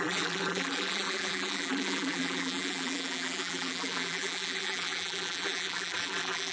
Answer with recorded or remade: remade